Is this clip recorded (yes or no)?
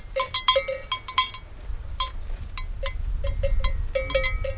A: yes